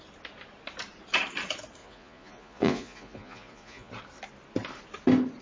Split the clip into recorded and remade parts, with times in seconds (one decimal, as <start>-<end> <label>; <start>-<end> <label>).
0.0-1.8 recorded; 1.8-3.9 remade; 3.9-5.4 recorded

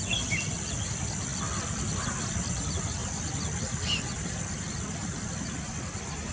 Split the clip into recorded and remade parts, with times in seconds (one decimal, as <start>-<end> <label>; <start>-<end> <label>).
0.0-6.3 recorded

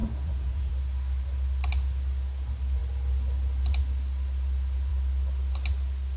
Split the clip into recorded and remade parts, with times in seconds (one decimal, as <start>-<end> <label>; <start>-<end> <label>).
0.0-0.7 remade; 0.7-6.2 recorded

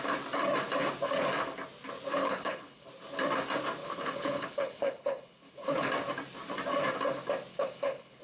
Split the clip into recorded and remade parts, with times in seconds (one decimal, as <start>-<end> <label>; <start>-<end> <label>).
0.0-2.2 recorded; 2.2-2.9 remade; 2.9-3.8 recorded; 3.8-5.9 remade; 5.9-7.5 recorded; 7.5-8.2 remade

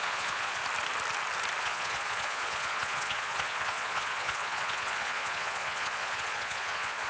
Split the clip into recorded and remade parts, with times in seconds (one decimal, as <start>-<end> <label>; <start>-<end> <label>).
0.0-0.6 remade; 0.6-1.6 recorded; 1.6-7.1 remade

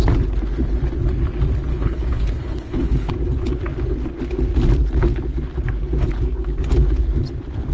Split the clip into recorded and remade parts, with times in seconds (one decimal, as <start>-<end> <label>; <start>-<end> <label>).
0.0-1.7 recorded; 1.7-3.1 remade; 3.1-7.7 recorded

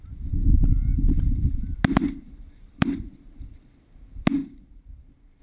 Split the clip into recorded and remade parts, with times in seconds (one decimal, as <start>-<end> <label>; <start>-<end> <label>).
0.0-5.4 recorded

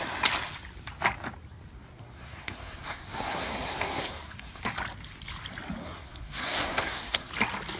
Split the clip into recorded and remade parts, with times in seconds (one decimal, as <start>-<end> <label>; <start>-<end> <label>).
0.0-1.9 recorded; 1.9-4.6 remade; 4.6-5.8 recorded; 5.8-7.3 remade; 7.3-7.8 recorded